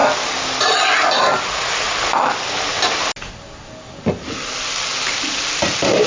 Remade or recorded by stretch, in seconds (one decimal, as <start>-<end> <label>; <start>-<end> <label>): 0.0-6.1 recorded